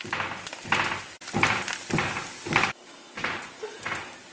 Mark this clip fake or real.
real